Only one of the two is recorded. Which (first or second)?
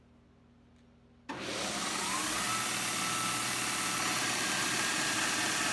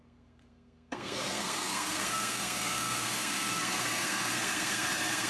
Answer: first